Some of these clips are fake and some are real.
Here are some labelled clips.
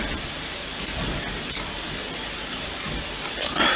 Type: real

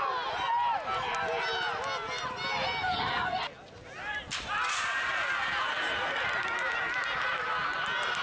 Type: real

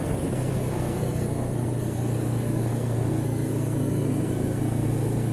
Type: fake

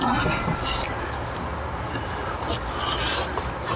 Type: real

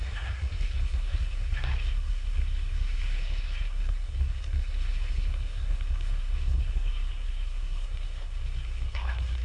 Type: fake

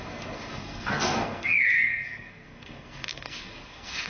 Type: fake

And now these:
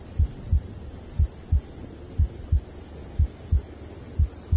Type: real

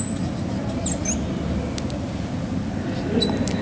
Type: real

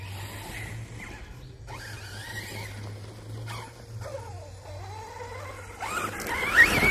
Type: real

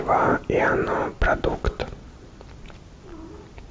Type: real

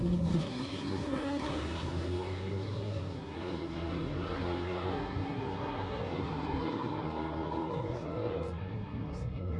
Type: fake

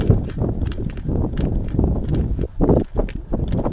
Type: real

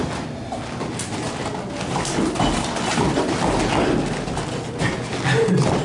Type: real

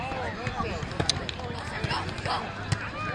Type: real